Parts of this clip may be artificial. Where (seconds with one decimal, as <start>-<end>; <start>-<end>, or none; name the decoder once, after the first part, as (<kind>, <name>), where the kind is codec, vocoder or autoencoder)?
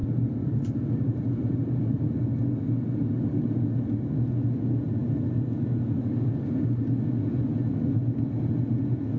0.0-2.0 (vocoder, BigVGAN v2)